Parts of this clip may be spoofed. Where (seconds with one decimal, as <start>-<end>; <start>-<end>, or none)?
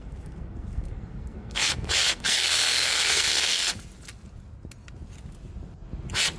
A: 0.0-3.8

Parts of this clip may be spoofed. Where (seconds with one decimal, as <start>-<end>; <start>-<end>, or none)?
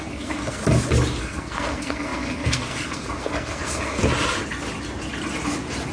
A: 0.0-0.6; 1.2-4.0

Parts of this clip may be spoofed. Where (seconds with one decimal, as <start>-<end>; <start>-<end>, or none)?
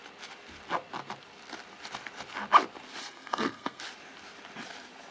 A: 3.0-3.8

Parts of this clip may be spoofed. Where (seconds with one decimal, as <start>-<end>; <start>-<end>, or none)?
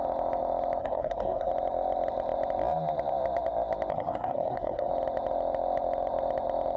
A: 0.8-1.5; 3.9-4.9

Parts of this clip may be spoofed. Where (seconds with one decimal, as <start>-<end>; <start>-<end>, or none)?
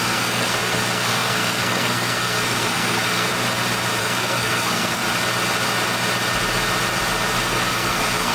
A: 0.0-3.3; 4.0-5.0; 7.4-8.3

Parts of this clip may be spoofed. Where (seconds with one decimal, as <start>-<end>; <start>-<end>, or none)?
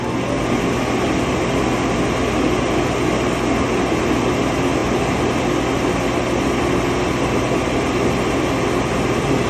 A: none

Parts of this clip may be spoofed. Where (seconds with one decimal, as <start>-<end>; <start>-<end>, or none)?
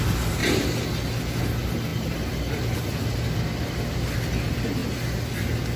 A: none